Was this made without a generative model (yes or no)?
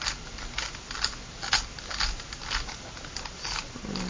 yes